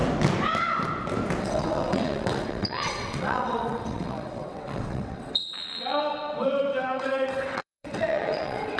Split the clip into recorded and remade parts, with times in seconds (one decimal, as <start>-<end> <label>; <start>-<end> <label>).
0.0-1.4 recorded; 1.4-8.8 remade